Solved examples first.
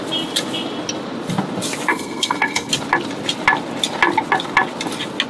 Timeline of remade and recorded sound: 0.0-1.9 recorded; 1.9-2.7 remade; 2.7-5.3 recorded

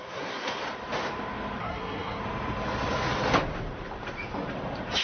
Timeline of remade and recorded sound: 0.0-0.6 remade; 0.6-1.6 recorded; 1.6-2.2 remade; 2.2-5.0 recorded

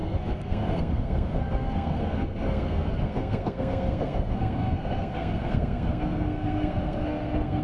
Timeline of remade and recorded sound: 0.0-7.6 remade

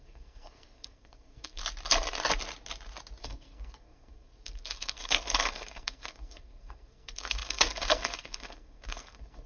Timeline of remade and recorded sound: 0.0-1.6 remade; 1.6-3.2 recorded; 3.2-9.5 remade

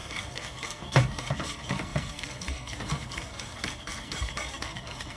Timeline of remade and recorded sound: 0.0-5.2 remade